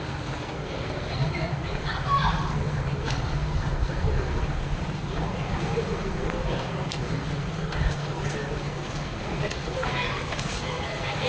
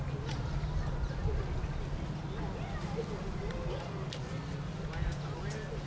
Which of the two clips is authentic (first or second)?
second